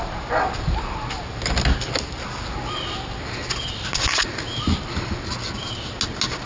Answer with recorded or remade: recorded